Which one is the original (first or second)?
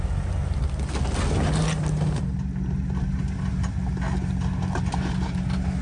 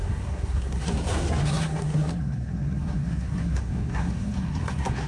first